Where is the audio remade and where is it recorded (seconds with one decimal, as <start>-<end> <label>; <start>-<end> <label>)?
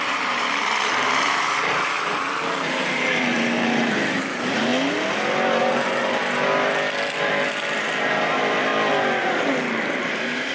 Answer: 0.0-4.7 remade; 4.7-5.6 recorded; 5.6-6.0 remade; 6.0-7.8 recorded; 7.8-8.7 remade; 8.7-9.2 recorded; 9.2-10.5 remade